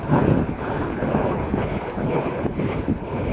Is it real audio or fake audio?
fake